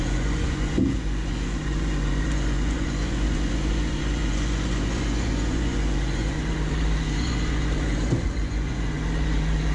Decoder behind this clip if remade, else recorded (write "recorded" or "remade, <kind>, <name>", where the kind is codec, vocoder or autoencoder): remade, vocoder, Vocos